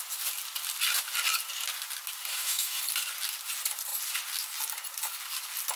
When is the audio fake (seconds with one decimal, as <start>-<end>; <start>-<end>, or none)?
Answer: 2.3-2.8

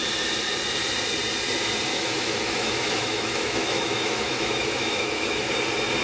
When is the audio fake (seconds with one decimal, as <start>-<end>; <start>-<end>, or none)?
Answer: 1.9-5.5